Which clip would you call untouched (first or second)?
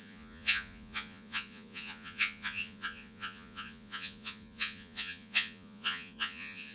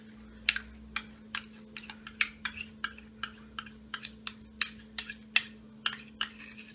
second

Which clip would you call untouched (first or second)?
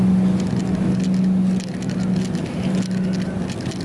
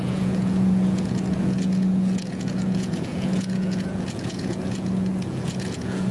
first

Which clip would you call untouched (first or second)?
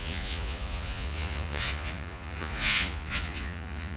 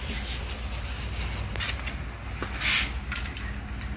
second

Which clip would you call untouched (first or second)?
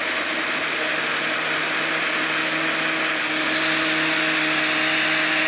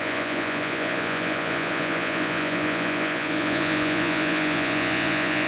first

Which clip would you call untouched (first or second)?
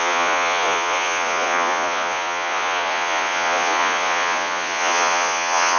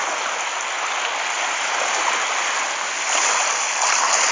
second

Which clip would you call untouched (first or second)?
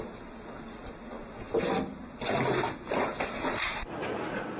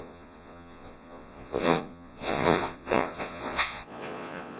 first